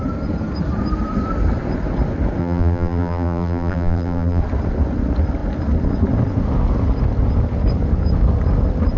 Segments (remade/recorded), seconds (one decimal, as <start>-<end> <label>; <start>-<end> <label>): 0.0-2.4 recorded; 2.4-4.4 remade; 4.4-9.0 recorded